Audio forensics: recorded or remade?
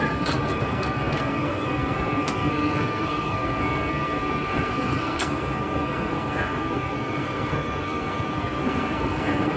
remade